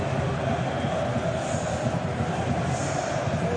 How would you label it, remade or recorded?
recorded